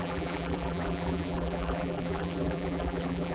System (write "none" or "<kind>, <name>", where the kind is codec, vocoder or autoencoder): vocoder, BigVGAN v2